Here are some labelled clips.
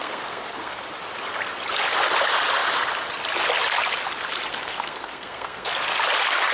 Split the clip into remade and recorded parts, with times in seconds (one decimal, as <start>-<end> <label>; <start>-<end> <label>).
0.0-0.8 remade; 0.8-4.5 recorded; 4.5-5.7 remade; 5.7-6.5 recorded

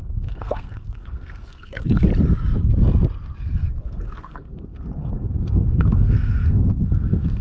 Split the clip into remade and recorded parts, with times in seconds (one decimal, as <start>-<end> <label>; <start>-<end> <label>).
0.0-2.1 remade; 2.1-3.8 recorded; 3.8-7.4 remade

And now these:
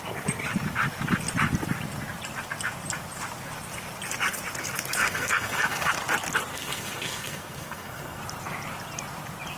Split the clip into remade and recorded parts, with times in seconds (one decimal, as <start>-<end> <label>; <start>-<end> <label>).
0.0-5.0 recorded; 5.0-5.9 remade; 5.9-6.5 recorded; 6.5-8.2 remade; 8.2-9.6 recorded

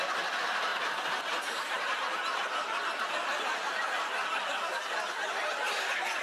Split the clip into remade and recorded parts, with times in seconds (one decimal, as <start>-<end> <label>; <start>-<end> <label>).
0.0-6.2 recorded

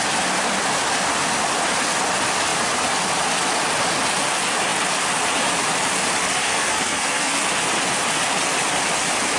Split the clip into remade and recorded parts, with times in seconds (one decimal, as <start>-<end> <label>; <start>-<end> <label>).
0.0-6.4 recorded; 6.4-7.4 remade; 7.4-9.4 recorded

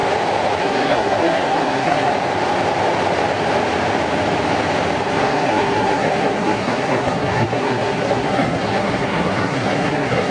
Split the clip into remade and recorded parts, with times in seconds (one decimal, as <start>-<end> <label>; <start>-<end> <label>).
0.0-0.6 recorded; 0.6-2.1 remade; 2.1-5.1 recorded; 5.1-10.3 remade

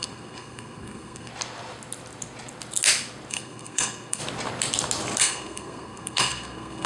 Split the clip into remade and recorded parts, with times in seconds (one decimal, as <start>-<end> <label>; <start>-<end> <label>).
0.0-1.3 remade; 1.3-3.3 recorded; 3.3-4.2 remade; 4.2-5.2 recorded; 5.2-6.9 remade